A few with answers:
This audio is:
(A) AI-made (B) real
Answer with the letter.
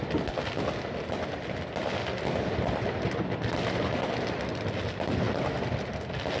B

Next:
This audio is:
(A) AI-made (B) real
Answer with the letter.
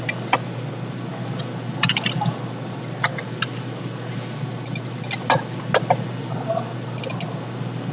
B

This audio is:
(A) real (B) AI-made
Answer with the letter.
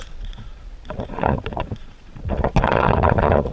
B